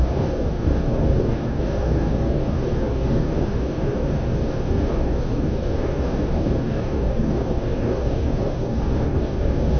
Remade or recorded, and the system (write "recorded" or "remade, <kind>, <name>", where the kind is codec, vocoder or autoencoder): remade, codec, DAC